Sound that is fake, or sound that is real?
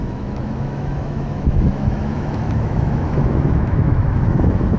fake